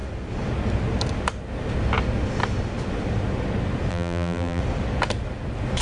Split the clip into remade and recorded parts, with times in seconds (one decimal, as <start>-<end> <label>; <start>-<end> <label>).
0.0-3.9 recorded; 3.9-4.6 remade; 4.6-5.8 recorded